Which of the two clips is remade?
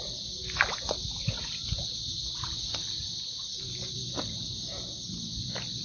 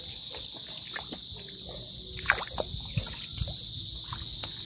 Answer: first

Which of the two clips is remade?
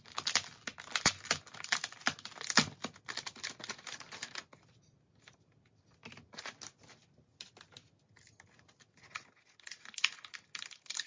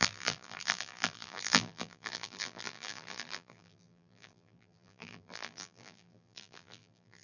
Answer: second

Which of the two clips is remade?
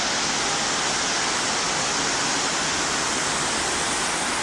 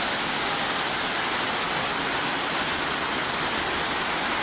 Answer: second